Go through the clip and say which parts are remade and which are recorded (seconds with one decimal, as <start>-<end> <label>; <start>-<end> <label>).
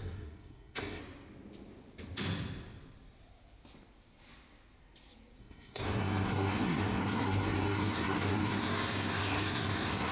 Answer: 0.0-1.0 remade; 1.0-5.4 recorded; 5.4-10.1 remade